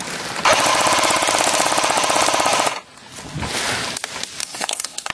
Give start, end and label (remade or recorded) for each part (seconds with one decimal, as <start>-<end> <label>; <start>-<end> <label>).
0.0-4.4 recorded; 4.4-5.1 remade